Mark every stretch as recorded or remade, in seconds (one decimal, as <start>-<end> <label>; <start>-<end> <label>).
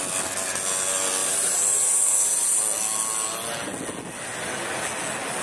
0.0-1.2 recorded; 1.2-2.6 remade; 2.6-5.4 recorded